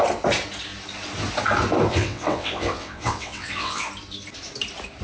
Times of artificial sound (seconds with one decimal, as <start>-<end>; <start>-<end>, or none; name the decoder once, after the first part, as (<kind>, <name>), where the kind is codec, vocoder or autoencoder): 1.9-3.9 (vocoder, WaveNeXt)